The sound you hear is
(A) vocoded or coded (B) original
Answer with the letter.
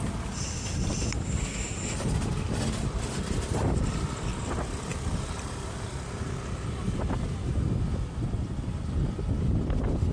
B